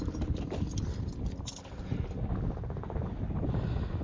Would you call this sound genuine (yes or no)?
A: yes